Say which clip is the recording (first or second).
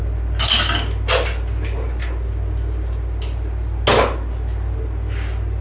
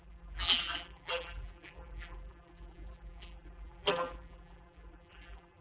first